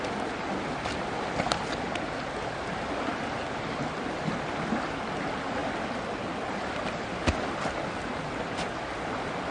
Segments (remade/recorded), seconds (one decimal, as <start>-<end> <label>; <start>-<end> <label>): 0.0-9.5 recorded